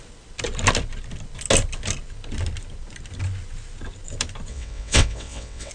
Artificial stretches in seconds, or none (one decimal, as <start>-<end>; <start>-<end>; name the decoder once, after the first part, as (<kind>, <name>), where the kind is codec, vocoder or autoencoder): 4.5-5.7 (vocoder, WaveNeXt)